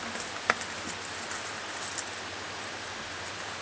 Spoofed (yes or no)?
no